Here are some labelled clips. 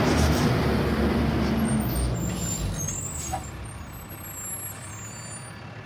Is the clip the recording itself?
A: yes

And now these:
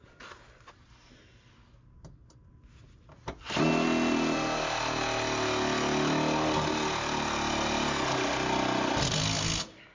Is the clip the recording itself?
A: yes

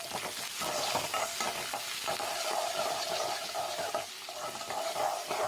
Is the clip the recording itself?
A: yes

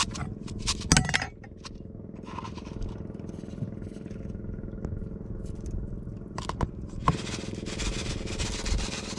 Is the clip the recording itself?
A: yes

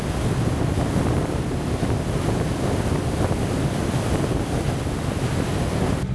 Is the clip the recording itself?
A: yes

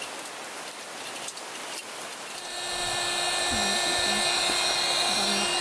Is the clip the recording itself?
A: yes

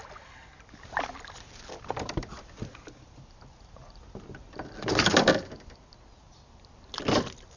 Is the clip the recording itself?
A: yes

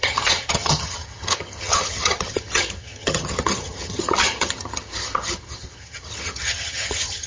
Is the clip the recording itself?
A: no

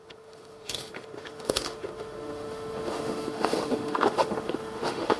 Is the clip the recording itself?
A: no